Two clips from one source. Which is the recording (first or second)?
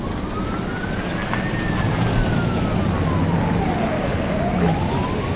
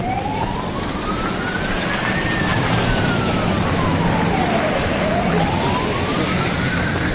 first